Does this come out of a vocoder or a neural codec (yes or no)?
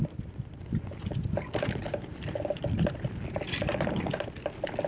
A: no